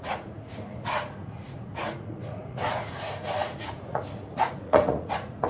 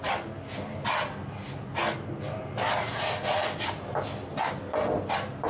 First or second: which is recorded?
second